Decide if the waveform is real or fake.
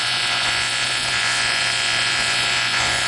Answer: fake